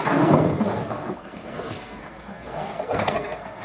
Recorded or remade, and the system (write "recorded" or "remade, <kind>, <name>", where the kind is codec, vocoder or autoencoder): remade, codec, SNAC